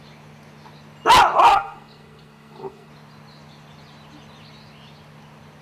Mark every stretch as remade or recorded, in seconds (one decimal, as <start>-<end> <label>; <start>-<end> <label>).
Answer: 0.0-1.5 recorded; 1.5-2.9 remade; 2.9-5.6 recorded

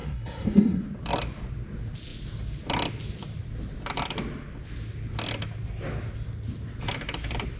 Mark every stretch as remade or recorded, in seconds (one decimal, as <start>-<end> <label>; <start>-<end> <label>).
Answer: 0.0-0.8 remade; 0.8-7.6 recorded

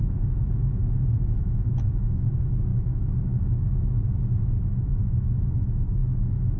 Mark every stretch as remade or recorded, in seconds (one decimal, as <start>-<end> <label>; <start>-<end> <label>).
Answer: 0.0-6.6 remade

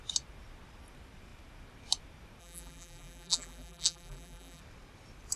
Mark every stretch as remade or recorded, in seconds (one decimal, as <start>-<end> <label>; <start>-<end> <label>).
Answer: 0.0-2.4 recorded; 2.4-4.6 remade; 4.6-5.4 recorded

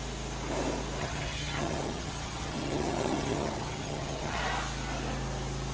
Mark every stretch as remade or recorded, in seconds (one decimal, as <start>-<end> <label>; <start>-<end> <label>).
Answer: 0.0-1.0 recorded; 1.0-4.4 remade; 4.4-5.7 recorded

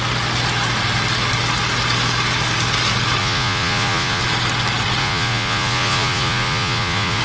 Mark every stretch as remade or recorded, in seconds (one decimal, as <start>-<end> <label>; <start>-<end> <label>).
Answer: 0.0-3.2 recorded; 3.2-4.2 remade; 4.2-5.0 recorded; 5.0-7.2 remade

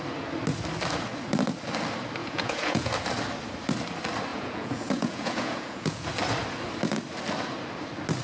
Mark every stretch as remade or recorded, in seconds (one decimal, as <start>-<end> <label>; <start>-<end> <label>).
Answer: 0.0-2.2 recorded; 2.2-2.9 remade; 2.9-4.3 recorded; 4.3-6.1 remade; 6.1-8.2 recorded